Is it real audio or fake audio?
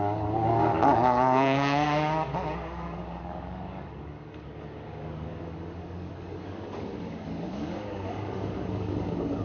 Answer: fake